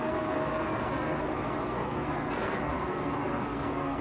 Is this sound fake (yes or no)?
yes